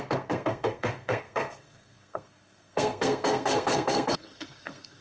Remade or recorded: remade